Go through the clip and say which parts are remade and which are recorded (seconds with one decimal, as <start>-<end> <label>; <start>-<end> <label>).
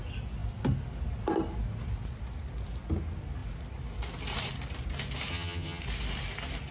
0.0-5.3 recorded; 5.3-5.8 remade; 5.8-6.7 recorded